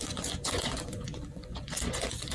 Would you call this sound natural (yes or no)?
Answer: no